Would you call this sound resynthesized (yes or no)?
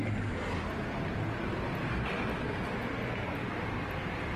no